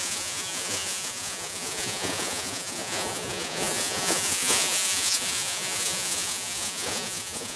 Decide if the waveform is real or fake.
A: fake